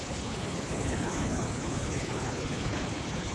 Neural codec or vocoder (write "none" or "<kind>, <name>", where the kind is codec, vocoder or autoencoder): codec, HILCodec